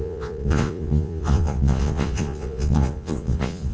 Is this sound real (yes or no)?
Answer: no